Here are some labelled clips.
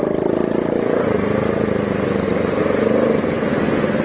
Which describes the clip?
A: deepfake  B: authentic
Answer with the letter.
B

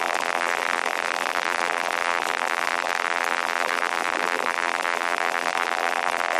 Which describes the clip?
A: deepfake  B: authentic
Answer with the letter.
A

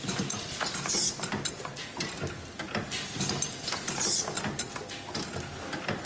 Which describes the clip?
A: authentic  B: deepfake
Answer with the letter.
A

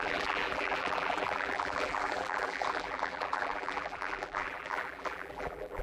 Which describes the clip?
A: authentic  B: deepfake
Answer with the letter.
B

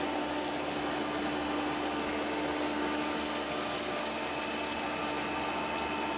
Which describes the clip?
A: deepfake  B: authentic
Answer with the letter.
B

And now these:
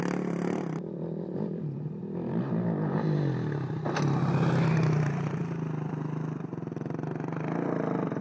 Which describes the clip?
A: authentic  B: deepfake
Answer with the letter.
A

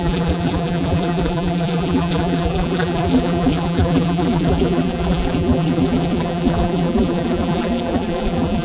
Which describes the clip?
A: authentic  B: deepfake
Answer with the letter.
B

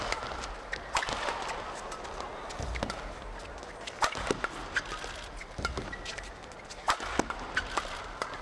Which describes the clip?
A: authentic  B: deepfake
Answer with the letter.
A